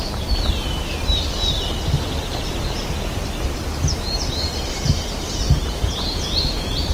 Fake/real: real